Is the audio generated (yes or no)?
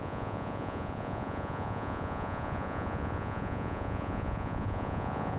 yes